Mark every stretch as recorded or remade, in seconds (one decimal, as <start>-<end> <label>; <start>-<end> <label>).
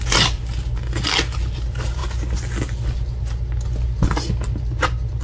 0.0-5.2 recorded